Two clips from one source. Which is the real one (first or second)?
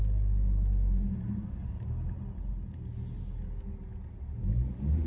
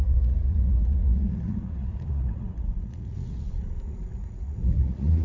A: first